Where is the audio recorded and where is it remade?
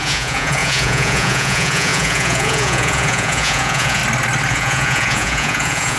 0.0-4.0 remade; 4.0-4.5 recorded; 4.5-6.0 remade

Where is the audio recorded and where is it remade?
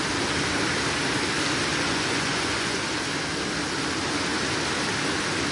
0.0-1.7 recorded; 1.7-2.8 remade; 2.8-5.5 recorded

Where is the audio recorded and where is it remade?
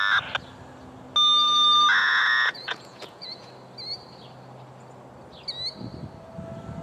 0.0-2.0 recorded; 2.0-3.5 remade; 3.5-6.8 recorded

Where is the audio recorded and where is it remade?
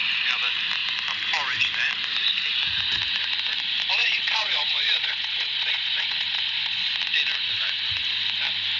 0.0-4.0 recorded; 4.0-6.9 remade; 6.9-8.8 recorded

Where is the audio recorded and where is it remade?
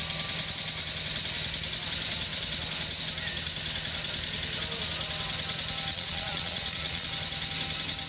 0.0-5.9 recorded; 5.9-7.1 remade; 7.1-8.1 recorded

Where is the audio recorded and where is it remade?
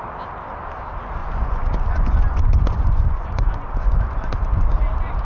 0.0-1.2 recorded; 1.2-4.3 remade; 4.3-5.2 recorded